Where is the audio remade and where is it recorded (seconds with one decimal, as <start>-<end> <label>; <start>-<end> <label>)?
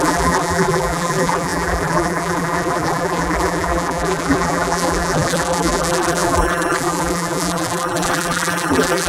0.0-9.1 remade